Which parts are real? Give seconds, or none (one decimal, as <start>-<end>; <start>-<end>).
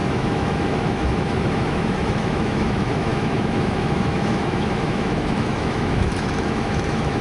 none